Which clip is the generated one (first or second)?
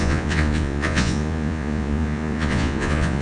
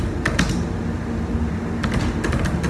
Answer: first